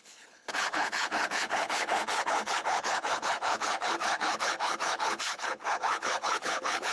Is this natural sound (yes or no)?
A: no